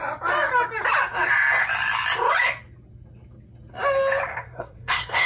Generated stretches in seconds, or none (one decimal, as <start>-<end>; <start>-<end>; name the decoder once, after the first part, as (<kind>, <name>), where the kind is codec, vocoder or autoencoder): 4.3-5.3 (codec, SNAC)